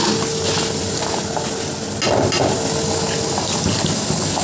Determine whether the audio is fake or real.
real